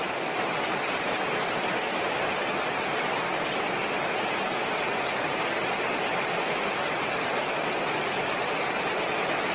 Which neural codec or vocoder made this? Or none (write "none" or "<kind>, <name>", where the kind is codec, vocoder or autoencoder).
none